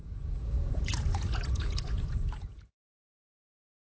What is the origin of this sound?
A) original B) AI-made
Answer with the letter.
B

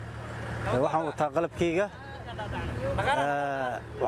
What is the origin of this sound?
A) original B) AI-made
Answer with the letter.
A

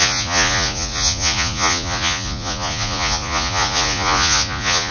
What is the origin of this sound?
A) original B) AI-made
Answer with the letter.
B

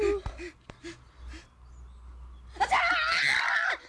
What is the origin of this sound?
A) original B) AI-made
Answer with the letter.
A